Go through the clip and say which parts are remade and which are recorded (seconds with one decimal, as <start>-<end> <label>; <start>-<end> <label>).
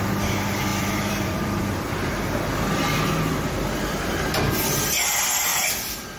0.0-0.7 recorded; 0.7-1.9 remade; 1.9-5.5 recorded; 5.5-6.2 remade